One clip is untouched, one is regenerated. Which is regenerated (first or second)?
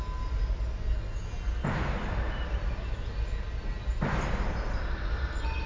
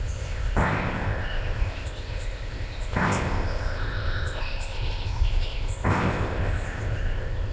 second